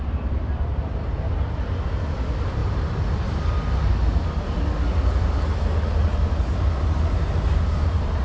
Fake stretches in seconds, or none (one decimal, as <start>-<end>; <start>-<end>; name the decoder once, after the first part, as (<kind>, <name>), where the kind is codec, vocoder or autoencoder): none

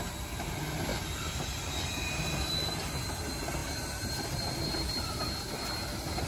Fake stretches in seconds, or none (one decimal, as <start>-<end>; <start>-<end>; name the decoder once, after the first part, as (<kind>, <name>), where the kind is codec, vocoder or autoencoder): 0.9-3.1 (vocoder, BigVGAN v2); 3.6-5.2

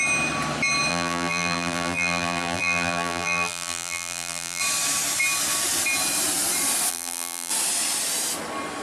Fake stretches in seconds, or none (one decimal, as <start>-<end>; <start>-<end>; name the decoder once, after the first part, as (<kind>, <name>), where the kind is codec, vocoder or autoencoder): 0.9-4.6 (vocoder, BigVGAN v2); 6.9-7.5

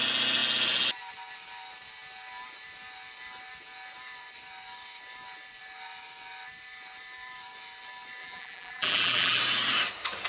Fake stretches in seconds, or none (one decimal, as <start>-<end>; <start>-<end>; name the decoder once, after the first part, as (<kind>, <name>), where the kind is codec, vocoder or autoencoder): 8.2-9.4 (vocoder, BigVGAN v2)

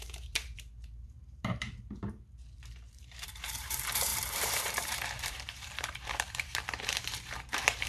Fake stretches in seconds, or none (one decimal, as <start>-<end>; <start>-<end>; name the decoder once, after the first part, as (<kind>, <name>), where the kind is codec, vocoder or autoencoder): 0.0-7.9 (vocoder, BigVGAN v2)

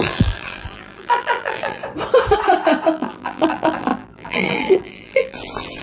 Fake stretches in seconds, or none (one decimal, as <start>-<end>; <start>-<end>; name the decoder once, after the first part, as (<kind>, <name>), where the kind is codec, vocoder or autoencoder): 0.0-1.8 (vocoder, BigVGAN v2); 2.9-5.8